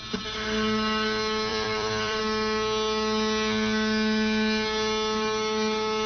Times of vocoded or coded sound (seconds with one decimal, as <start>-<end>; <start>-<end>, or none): 1.5-2.2